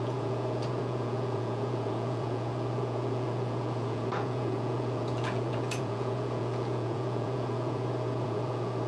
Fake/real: fake